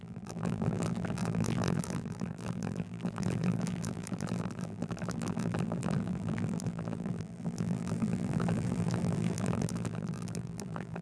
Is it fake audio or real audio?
fake